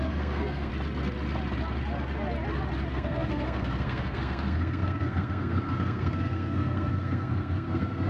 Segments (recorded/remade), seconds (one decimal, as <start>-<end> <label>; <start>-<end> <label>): 0.0-0.7 remade; 0.7-2.9 recorded; 2.9-8.1 remade